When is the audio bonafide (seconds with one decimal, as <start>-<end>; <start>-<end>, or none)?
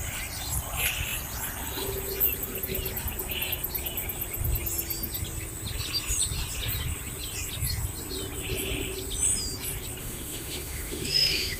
0.0-10.0